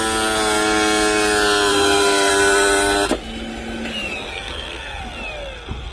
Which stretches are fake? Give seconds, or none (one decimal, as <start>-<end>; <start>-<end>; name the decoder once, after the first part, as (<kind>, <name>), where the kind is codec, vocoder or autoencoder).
1.7-2.3 (codec, SNAC); 4.3-5.0